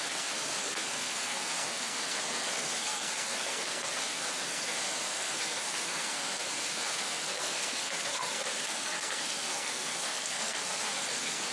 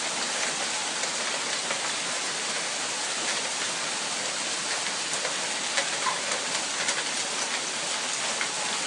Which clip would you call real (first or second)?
second